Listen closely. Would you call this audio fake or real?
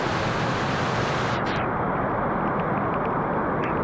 real